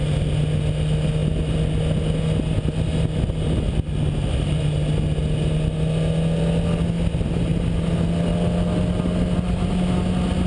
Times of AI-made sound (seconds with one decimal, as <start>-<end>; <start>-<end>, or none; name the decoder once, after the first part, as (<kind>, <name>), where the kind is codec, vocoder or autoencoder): none